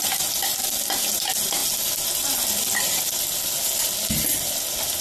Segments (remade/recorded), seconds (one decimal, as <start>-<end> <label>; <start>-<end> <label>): 0.0-5.0 recorded